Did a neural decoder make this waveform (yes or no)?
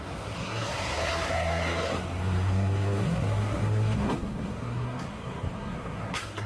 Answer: yes